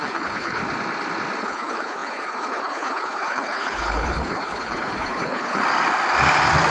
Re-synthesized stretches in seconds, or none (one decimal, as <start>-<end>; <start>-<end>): 0.0-0.6; 1.4-5.6